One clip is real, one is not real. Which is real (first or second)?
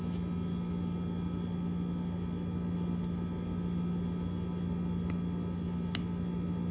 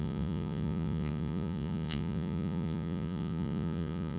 first